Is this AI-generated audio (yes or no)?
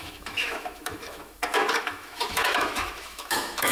yes